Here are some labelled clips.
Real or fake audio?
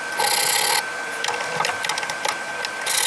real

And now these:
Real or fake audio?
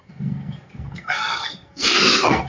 fake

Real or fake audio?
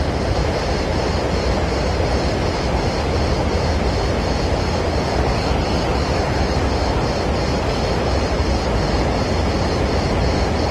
real